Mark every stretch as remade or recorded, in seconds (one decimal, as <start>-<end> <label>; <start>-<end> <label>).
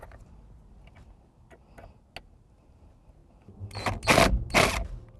0.0-5.2 recorded